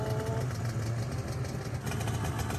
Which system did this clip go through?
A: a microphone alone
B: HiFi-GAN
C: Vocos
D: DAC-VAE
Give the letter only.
A